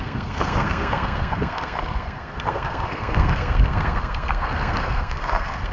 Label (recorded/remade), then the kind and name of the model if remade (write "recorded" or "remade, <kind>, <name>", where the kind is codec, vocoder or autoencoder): remade, codec, SNAC